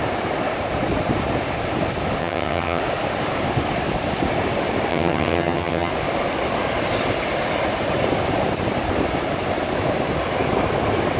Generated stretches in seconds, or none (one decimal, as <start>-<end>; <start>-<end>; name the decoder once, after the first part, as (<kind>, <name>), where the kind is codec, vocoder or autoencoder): 2.2-2.8 (vocoder, HiFi-GAN); 4.9-5.9